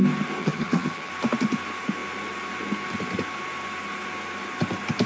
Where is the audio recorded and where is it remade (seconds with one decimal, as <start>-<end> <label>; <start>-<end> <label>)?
0.0-0.4 recorded; 0.4-1.1 remade; 1.1-5.1 recorded

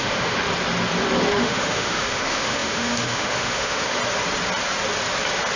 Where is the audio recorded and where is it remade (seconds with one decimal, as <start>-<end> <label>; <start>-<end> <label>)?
0.0-0.4 remade; 0.4-1.3 recorded; 1.3-4.0 remade; 4.0-5.6 recorded